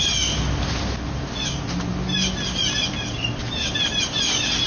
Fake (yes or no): no